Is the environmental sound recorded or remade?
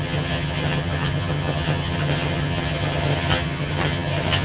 remade